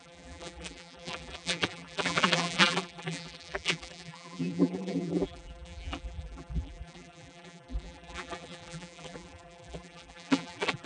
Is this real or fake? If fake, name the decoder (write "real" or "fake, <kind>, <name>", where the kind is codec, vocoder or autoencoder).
fake, vocoder, BigVGAN v2